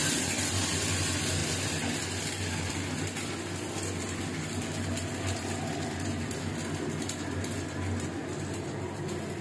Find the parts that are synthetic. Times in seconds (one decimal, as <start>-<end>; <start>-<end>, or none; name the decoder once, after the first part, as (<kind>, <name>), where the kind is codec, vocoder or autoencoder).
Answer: none